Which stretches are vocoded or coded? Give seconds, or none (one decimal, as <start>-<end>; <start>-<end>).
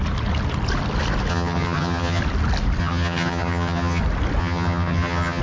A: 1.3-2.2; 2.8-4.0; 4.4-5.4